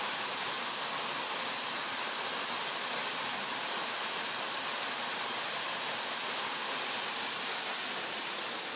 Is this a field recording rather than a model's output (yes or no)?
yes